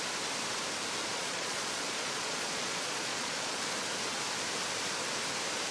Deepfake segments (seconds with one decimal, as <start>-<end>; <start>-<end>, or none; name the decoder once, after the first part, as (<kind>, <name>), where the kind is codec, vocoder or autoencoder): 1.0-3.6 (vocoder, Vocos)